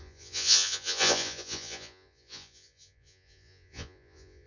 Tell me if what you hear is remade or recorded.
remade